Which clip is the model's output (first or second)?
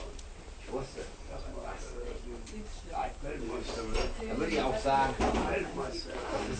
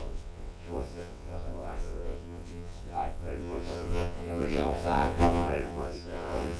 second